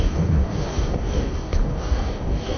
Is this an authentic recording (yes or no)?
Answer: no